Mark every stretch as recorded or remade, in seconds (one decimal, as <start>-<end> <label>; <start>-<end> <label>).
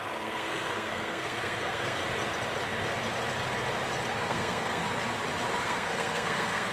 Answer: 0.0-2.0 remade; 2.0-4.1 recorded; 4.1-4.8 remade; 4.8-5.6 recorded; 5.6-6.7 remade